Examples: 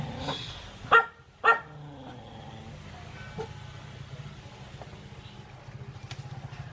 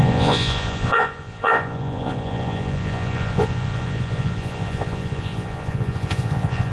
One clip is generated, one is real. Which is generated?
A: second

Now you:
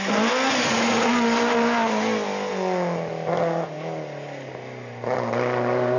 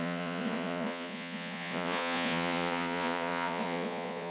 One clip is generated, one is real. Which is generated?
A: second